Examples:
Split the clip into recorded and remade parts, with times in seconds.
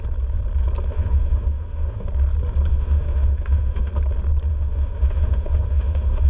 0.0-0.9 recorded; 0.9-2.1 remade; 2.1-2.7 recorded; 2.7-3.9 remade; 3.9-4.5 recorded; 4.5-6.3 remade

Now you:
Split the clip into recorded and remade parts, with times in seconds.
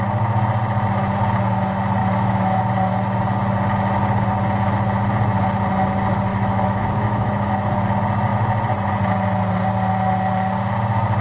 0.0-2.0 recorded; 2.0-2.6 remade; 2.6-6.3 recorded; 6.3-7.5 remade; 7.5-11.2 recorded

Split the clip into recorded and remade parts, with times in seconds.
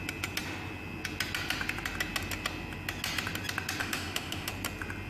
0.0-3.8 recorded; 3.8-4.5 remade; 4.5-5.1 recorded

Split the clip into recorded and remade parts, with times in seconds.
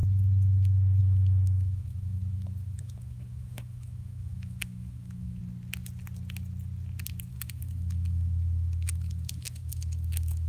0.0-1.0 recorded; 1.0-5.4 remade; 5.4-7.3 recorded; 7.3-10.5 remade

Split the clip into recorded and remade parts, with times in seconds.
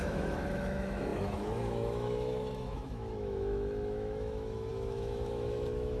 0.0-6.0 remade